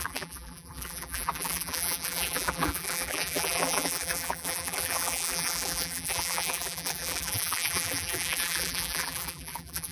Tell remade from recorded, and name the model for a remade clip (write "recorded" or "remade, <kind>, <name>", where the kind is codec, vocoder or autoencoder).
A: remade, vocoder, BigVGAN v2